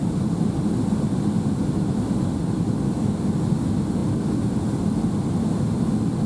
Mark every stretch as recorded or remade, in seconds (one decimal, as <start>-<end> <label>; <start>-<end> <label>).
0.0-6.3 recorded